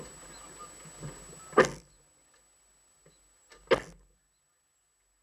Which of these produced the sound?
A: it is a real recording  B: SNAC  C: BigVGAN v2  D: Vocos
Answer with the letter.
A